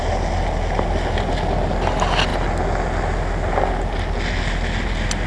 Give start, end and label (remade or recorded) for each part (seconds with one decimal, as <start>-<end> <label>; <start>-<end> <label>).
0.0-5.3 recorded